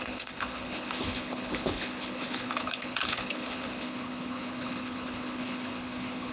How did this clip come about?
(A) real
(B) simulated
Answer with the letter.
B